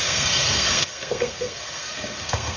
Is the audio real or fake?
fake